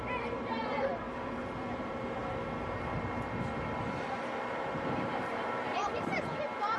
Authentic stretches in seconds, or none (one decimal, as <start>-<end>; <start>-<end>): none